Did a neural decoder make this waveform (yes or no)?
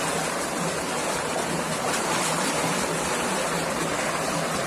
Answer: no